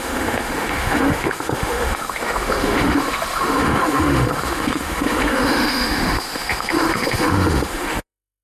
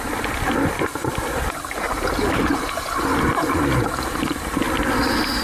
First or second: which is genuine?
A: second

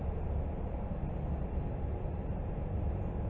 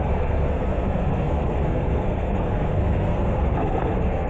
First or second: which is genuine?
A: first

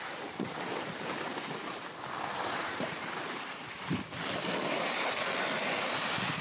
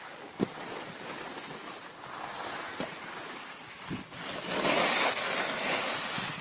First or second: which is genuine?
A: second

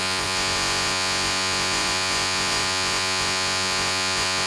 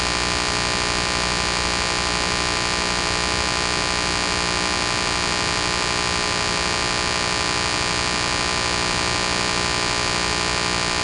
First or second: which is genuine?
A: second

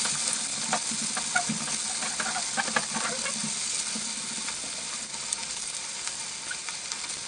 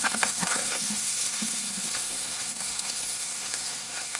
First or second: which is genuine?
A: first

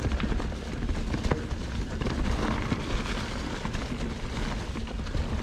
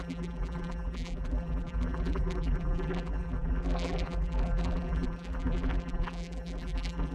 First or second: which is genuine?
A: first